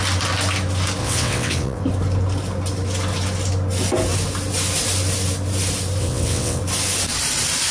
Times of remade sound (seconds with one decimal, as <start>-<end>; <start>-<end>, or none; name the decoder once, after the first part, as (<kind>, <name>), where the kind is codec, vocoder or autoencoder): 1.0-1.8 (vocoder, WaveNeXt); 6.0-6.6